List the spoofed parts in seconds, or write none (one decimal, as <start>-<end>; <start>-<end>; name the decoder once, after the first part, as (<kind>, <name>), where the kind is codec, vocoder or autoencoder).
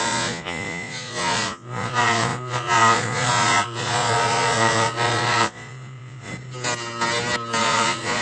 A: 0.0-6.3 (vocoder, Vocos); 7.6-8.2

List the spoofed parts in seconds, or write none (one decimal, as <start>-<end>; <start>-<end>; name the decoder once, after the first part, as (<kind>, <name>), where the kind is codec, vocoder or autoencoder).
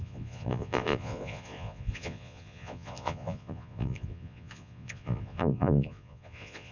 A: 0.0-6.7 (vocoder, Vocos)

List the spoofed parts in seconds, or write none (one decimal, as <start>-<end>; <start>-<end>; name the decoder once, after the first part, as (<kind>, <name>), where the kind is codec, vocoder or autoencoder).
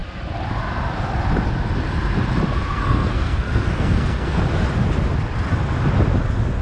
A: 2.7-4.4 (codec, SNAC)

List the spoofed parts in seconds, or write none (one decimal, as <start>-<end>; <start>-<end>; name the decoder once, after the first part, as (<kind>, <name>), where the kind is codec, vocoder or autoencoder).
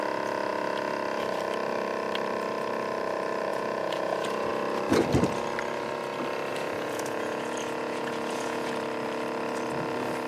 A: 3.5-4.5 (vocoder, Vocos); 6.5-8.7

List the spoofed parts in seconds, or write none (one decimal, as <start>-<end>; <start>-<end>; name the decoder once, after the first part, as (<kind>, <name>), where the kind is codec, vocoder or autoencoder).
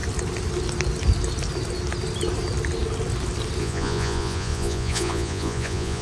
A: 3.6-6.0 (vocoder, Vocos)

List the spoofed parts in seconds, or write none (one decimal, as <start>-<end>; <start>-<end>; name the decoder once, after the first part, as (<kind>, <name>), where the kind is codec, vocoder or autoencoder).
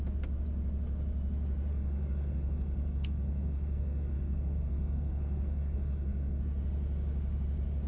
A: 1.7-6.4 (codec, SNAC)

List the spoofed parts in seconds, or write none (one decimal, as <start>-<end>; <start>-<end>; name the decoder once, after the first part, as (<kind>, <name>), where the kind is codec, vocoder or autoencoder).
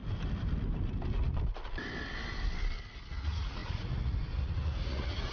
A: 3.1-5.3 (vocoder, Vocos)